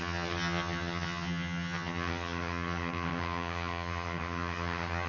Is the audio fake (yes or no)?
yes